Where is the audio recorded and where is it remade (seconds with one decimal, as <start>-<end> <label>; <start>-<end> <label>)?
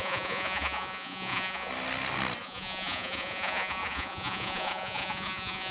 0.0-1.7 remade; 1.7-2.4 recorded; 2.4-5.7 remade